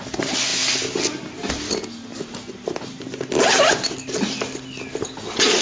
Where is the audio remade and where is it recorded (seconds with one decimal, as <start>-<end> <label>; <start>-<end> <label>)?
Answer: 0.0-5.6 recorded

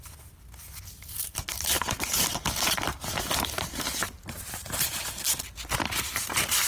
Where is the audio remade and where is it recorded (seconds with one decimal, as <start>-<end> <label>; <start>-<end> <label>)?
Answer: 0.0-1.5 recorded; 1.5-5.0 remade; 5.0-6.7 recorded

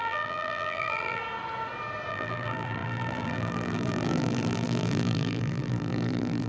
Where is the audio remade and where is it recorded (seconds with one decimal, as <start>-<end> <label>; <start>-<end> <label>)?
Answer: 0.0-1.2 remade; 1.2-2.1 recorded; 2.1-6.5 remade

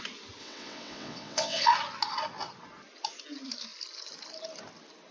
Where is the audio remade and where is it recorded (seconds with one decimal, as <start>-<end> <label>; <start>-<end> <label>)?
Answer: 0.0-0.4 recorded; 0.4-1.7 remade; 1.7-5.1 recorded

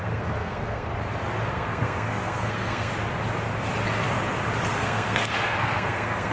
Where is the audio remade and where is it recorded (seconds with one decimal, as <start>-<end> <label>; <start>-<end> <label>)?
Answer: 0.0-0.9 remade; 0.9-1.5 recorded; 1.5-2.9 remade; 2.9-4.7 recorded; 4.7-6.3 remade

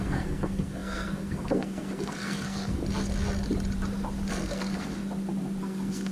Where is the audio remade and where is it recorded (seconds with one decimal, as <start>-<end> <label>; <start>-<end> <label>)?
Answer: 0.0-2.8 remade; 2.8-4.3 recorded; 4.3-5.0 remade; 5.0-5.6 recorded; 5.6-6.1 remade